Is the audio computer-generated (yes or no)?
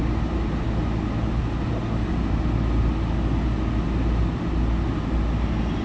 no